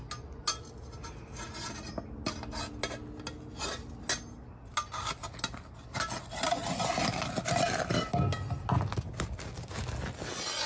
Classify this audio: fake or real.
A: real